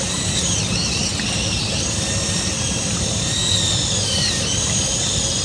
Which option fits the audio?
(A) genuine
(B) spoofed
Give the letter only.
A